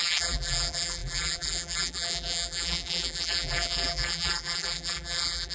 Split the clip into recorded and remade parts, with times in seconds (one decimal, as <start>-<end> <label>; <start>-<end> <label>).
0.0-5.5 remade